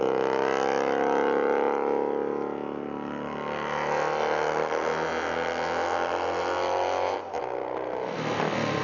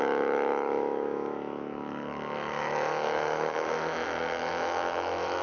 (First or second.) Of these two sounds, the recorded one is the first